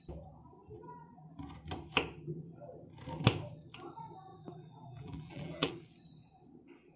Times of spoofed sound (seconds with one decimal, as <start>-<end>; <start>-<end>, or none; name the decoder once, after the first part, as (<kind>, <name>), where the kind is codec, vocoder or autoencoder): 0.6-1.3 (vocoder, BigVGAN v2); 4.3-5.7